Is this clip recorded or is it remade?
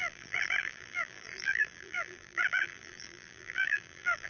remade